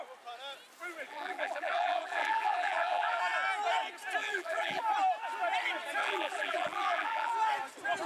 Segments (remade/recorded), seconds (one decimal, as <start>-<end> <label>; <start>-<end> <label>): 0.0-1.1 recorded; 1.1-3.2 remade; 3.2-4.2 recorded; 4.2-4.8 remade; 4.8-6.0 recorded; 6.0-7.3 remade; 7.3-8.1 recorded

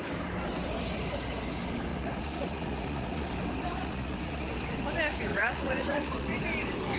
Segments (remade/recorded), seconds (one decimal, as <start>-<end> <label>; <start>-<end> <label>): 0.0-1.9 recorded; 1.9-3.3 remade; 3.3-3.8 recorded; 3.8-4.5 remade; 4.5-5.3 recorded; 5.3-6.3 remade; 6.3-7.0 recorded

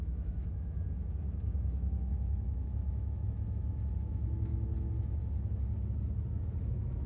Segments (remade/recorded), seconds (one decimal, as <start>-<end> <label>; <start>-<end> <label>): 0.0-4.5 remade; 4.5-6.6 recorded; 6.6-7.1 remade

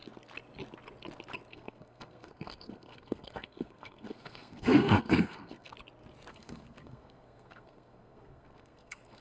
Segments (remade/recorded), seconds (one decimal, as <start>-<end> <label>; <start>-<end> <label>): 0.0-1.5 recorded; 1.5-5.7 remade; 5.7-6.3 recorded; 6.3-9.2 remade

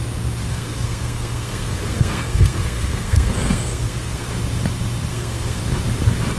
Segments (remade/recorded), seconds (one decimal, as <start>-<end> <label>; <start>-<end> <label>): 0.0-0.5 recorded; 0.5-4.3 remade; 4.3-5.1 recorded; 5.1-5.6 remade; 5.6-6.4 recorded

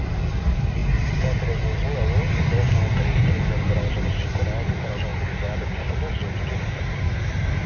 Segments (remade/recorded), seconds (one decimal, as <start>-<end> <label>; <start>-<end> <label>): 0.0-7.7 recorded

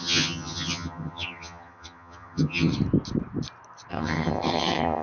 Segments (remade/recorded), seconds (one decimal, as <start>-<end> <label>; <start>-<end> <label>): 0.0-2.7 remade; 2.7-3.9 recorded; 3.9-5.0 remade